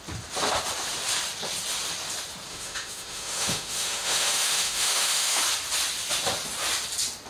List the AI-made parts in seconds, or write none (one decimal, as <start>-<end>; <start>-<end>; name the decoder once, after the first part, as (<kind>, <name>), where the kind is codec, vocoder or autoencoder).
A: 2.5-5.4 (autoencoder, DAC-VAE)

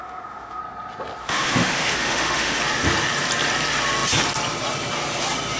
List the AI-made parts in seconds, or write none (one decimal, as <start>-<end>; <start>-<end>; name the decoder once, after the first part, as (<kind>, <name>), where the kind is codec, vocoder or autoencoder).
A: 0.0-0.6 (autoencoder, DAC-VAE); 1.2-2.6

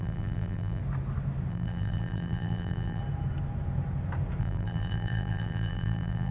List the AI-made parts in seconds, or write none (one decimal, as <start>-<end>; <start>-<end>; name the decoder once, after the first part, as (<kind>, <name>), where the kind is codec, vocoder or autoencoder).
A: 0.0-0.8 (vocoder, BigVGAN v2); 1.5-3.0; 4.4-6.3

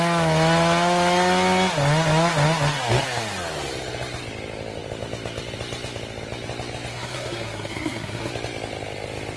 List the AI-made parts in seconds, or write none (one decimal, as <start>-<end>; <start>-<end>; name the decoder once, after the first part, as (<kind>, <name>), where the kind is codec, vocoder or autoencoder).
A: 6.9-8.3 (codec, SNAC)

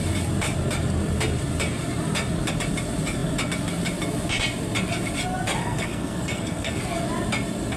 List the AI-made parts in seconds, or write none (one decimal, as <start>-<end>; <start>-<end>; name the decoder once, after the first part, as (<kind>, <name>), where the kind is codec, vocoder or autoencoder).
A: 5.6-6.8 (codec, SNAC)